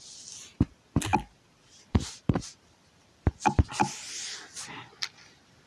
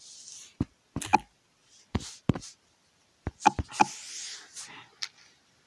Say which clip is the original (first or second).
second